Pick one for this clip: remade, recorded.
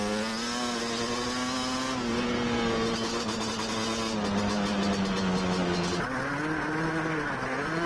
recorded